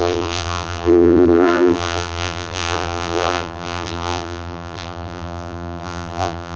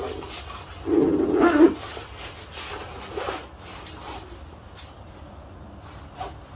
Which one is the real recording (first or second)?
second